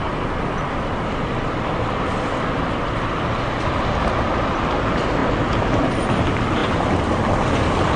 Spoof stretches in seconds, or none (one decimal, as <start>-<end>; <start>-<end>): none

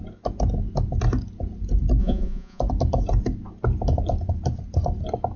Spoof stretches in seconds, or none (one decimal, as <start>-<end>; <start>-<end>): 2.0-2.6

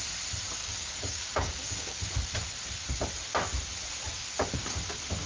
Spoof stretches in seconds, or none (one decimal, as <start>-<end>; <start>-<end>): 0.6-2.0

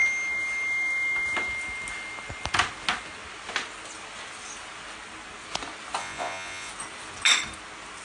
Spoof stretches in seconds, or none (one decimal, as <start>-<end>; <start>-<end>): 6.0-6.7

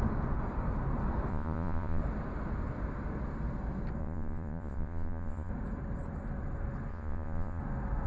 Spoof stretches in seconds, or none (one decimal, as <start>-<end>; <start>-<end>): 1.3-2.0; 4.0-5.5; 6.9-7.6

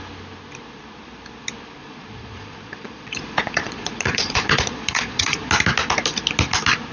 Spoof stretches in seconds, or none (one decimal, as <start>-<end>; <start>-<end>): 1.8-5.5